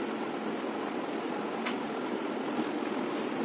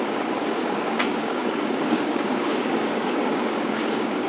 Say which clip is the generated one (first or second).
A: second